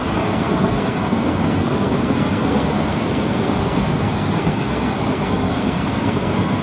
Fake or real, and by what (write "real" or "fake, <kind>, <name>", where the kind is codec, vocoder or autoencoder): fake, codec, SNAC